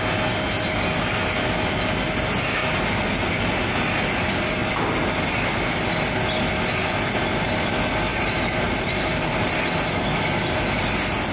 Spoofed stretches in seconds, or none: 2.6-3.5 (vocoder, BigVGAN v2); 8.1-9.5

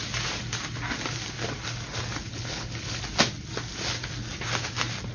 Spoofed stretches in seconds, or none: 2.3-3.0 (codec, HILCodec)